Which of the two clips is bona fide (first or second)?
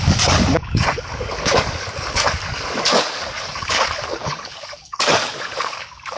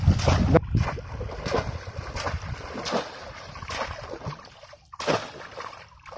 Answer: second